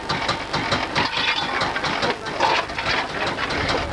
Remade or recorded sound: recorded